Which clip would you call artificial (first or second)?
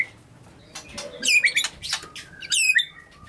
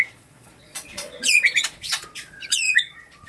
second